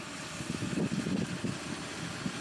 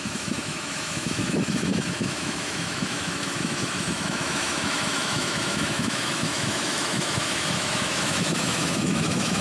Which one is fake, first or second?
second